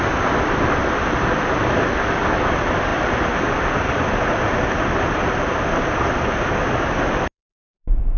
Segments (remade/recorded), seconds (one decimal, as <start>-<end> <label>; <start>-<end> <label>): 0.0-8.2 remade